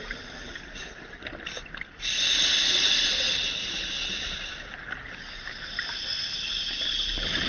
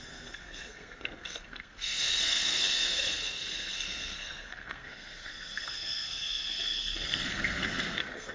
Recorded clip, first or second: first